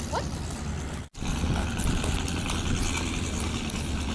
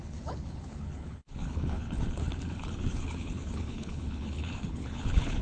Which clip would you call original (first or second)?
first